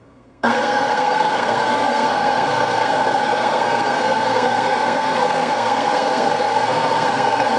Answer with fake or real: fake